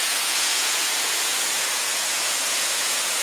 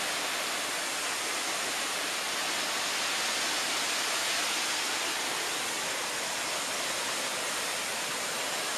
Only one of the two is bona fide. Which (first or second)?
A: second